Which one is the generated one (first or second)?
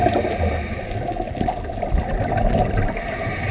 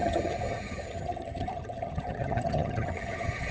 second